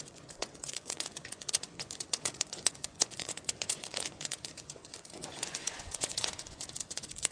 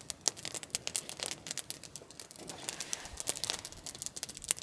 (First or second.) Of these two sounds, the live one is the second